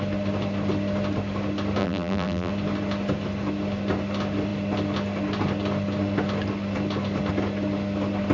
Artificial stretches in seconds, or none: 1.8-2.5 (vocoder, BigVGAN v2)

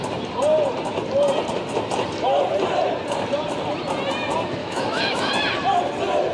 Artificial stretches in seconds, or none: 4.6-5.3 (autoencoder, DAC-VAE)

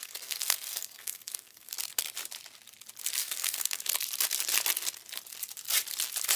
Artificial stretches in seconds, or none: 0.0-1.7 (codec, SNAC); 3.2-3.8

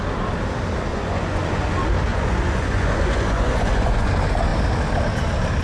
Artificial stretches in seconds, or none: 0.9-1.7 (vocoder, Vocos); 2.1-4.1

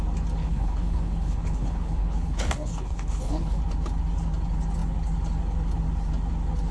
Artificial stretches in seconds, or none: 0.4-3.6 (codec, HILCodec)

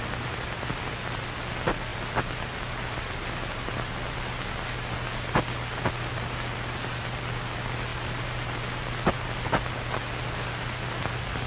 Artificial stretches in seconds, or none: none

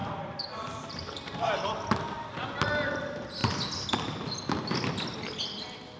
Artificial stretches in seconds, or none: 0.0-0.9 (vocoder, BigVGAN v2)